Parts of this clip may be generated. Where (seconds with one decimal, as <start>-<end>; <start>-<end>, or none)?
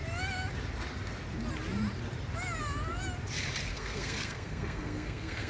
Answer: 3.7-5.5